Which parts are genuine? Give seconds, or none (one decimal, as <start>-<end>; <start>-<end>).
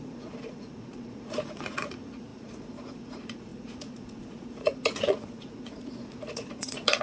none